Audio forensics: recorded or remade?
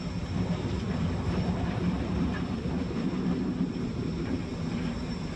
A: recorded